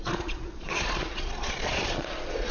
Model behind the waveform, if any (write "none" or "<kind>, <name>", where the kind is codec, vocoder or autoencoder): vocoder, Vocos